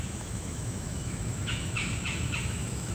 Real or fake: fake